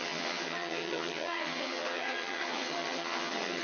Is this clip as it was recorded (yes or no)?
no